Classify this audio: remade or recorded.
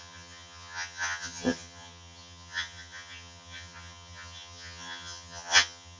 remade